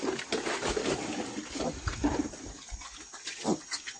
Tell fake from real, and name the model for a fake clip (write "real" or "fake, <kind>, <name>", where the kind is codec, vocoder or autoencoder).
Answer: real